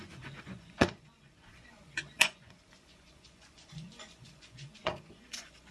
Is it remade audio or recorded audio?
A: remade